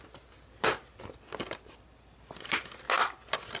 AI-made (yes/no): no